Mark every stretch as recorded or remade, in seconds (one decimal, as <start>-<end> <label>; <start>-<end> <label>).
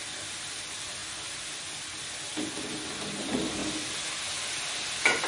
0.0-5.3 recorded